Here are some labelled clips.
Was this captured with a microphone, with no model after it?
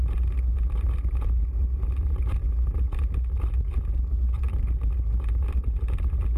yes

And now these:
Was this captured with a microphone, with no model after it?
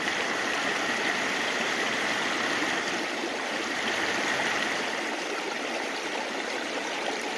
no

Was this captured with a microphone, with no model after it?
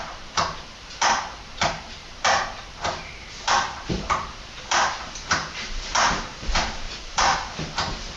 no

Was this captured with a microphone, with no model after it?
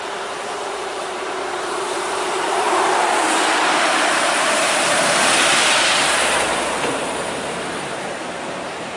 no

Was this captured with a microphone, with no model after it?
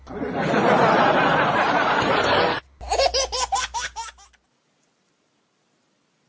yes